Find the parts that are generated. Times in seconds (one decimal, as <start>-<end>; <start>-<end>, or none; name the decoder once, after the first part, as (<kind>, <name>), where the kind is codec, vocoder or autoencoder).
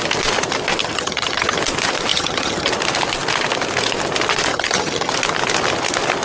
0.8-1.6 (vocoder, HiFi-GAN); 2.1-2.7; 4.5-5.1